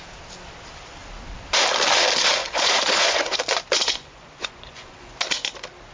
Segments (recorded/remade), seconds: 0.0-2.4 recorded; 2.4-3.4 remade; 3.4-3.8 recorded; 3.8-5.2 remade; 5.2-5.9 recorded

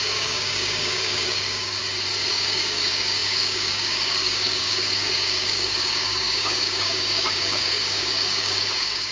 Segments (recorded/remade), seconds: 0.0-1.8 remade; 1.8-2.3 recorded; 2.3-9.1 remade